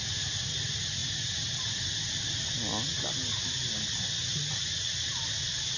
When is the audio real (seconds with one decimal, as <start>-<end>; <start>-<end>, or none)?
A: 0.0-5.8